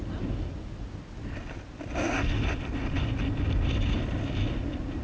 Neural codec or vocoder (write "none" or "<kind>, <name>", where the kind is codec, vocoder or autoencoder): none